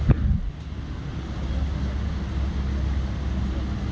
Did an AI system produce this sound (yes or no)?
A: no